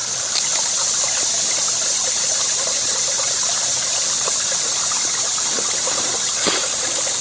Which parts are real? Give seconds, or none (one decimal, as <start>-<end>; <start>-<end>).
0.0-7.2

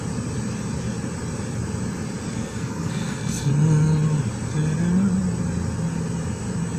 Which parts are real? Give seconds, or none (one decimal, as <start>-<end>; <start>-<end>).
0.0-2.3; 3.5-6.8

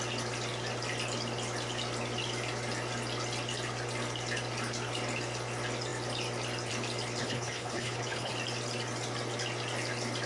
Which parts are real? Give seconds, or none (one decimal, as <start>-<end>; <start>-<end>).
0.0-7.2; 8.3-10.3

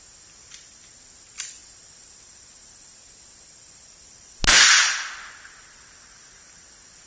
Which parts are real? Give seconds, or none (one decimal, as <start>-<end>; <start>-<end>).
0.0-7.1

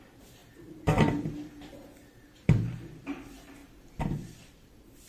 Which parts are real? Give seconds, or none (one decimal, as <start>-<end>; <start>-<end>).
0.4-1.1

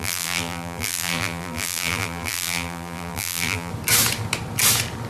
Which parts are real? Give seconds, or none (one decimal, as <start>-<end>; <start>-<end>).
3.7-5.1

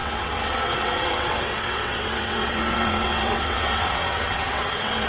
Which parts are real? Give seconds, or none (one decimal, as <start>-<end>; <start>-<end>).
none